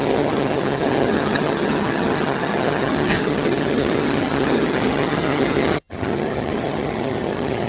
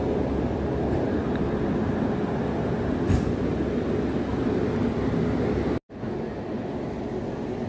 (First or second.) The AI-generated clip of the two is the first